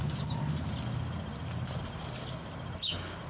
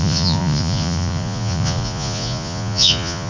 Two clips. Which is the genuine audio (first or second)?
first